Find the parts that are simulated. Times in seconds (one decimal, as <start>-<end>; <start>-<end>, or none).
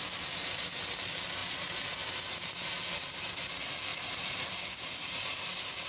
1.4-3.2; 3.9-5.9